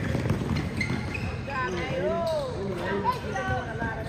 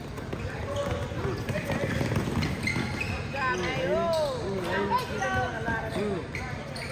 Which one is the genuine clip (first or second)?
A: second